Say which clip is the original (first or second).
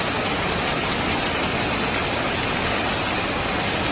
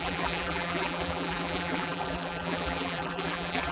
first